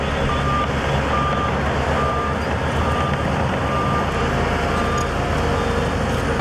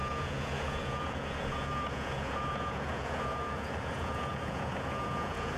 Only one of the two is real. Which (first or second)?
first